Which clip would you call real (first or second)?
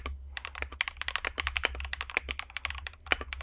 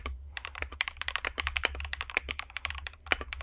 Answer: first